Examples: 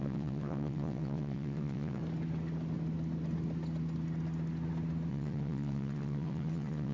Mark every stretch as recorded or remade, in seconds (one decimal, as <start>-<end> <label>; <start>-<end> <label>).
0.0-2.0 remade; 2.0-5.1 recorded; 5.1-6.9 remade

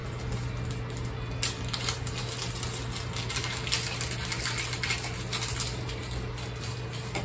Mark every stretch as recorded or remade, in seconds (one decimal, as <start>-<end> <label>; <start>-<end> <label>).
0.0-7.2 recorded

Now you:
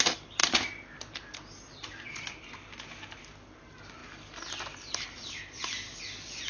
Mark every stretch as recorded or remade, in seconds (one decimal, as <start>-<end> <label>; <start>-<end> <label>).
0.0-6.5 recorded

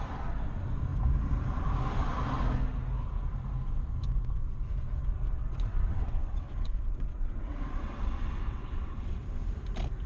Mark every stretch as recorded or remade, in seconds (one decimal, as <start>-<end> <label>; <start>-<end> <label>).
0.0-5.4 recorded; 5.4-9.4 remade; 9.4-10.1 recorded

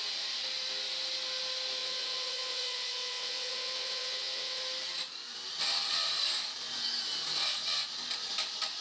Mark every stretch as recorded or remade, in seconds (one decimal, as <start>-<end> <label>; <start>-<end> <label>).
0.0-1.8 recorded; 1.8-4.6 remade; 4.6-8.8 recorded